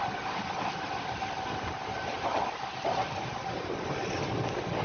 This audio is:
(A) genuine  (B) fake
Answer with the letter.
A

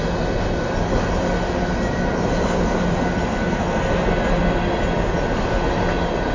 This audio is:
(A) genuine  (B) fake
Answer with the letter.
A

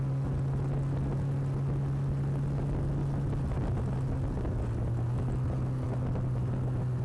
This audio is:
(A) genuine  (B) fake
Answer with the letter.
A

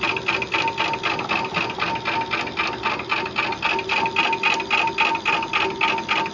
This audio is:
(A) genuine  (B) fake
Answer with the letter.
A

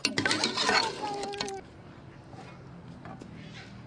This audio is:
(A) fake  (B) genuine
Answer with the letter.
B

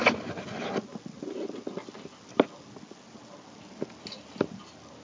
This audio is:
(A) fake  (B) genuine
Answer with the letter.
B